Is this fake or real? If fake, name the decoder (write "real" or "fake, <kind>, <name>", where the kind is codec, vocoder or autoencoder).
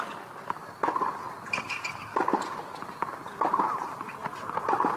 real